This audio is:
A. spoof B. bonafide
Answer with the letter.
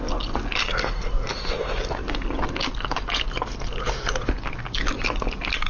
B